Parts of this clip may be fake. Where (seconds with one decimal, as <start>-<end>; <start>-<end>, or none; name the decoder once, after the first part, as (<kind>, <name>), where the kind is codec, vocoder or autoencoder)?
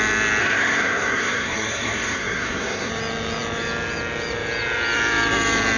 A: 0.4-2.9 (codec, SNAC)